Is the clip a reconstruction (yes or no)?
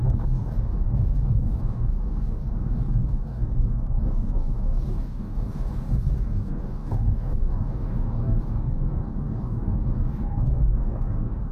yes